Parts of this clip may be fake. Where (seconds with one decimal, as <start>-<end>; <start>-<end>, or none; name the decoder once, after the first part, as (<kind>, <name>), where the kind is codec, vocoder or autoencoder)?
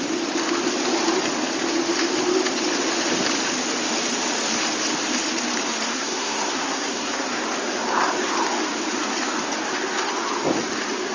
5.9-7.4 (codec, SNAC)